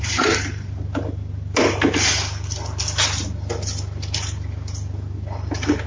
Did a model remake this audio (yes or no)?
no